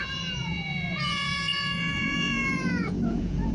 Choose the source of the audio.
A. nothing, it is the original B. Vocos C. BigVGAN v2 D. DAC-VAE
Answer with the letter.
B